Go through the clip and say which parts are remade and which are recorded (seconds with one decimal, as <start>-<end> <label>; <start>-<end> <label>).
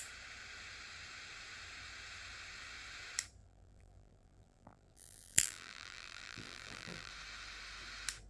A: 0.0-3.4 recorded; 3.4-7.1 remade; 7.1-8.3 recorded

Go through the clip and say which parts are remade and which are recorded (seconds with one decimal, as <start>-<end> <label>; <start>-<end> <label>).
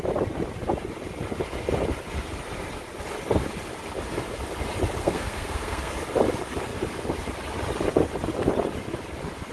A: 0.0-5.0 recorded; 5.0-5.9 remade; 5.9-9.5 recorded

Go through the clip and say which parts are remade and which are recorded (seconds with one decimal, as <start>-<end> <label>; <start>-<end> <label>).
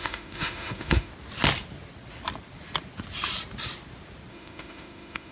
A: 0.0-1.1 remade; 1.1-4.3 recorded; 4.3-5.3 remade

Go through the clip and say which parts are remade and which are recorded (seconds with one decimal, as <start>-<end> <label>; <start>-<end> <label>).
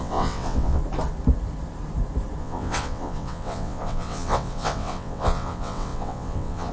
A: 0.0-0.8 remade; 0.8-2.4 recorded; 2.4-6.7 remade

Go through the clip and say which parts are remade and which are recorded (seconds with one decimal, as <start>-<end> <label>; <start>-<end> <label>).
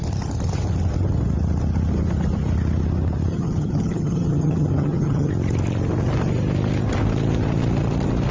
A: 0.0-3.3 recorded; 3.3-5.3 remade; 5.3-8.3 recorded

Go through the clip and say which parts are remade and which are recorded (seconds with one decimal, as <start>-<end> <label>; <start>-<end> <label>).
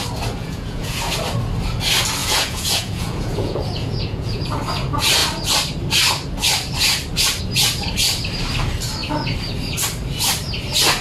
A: 0.0-0.4 recorded; 0.4-1.0 remade; 1.0-2.2 recorded; 2.2-4.4 remade; 4.4-11.0 recorded